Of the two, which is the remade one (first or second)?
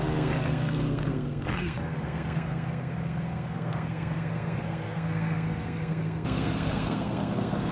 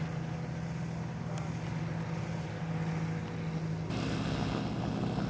first